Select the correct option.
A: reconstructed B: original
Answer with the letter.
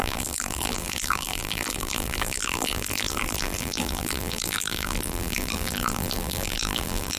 A